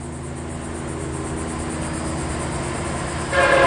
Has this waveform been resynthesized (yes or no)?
no